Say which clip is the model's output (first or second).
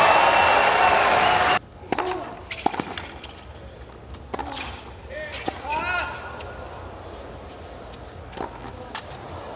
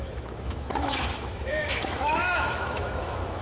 second